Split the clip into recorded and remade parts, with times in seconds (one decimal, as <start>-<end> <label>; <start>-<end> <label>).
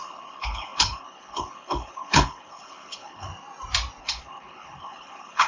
0.0-3.3 remade; 3.3-4.0 recorded; 4.0-5.5 remade